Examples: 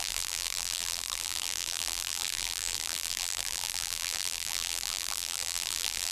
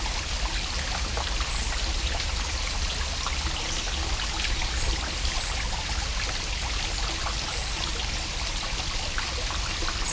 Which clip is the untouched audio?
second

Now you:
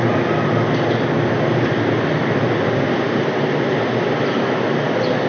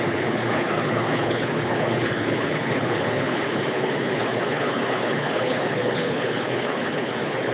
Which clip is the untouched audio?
first